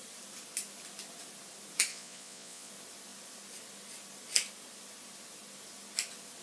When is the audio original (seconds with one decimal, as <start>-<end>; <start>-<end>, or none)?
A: 0.0-1.9; 2.7-6.4